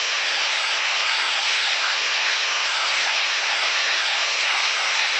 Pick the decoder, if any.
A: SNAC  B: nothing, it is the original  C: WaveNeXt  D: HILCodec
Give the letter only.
A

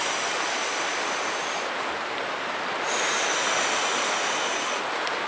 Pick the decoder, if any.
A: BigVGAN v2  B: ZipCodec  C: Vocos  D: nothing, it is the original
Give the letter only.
D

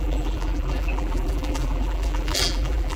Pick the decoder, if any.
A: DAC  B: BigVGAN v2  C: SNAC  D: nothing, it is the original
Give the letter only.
B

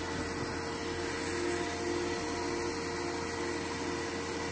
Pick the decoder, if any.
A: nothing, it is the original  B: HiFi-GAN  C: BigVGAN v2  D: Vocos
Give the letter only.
A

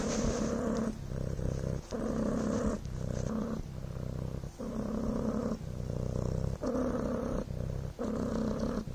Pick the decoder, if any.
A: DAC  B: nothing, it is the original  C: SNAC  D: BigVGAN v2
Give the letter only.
B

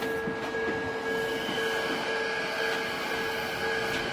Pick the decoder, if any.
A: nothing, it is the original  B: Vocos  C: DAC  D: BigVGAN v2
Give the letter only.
A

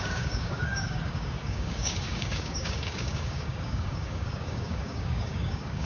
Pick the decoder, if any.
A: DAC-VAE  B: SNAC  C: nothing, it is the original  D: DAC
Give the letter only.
D